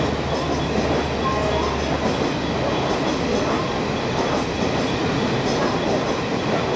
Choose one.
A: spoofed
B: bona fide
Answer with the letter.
B